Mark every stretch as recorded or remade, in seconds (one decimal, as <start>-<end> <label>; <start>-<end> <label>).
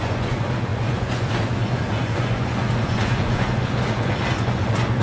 0.0-5.0 remade